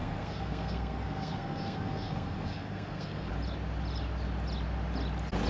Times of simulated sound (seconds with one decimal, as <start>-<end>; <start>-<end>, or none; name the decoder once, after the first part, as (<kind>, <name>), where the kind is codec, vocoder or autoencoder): 0.0-3.3 (codec, SNAC)